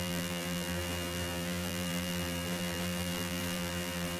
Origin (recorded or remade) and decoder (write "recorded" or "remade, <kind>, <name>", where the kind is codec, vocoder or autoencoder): remade, vocoder, BigVGAN v2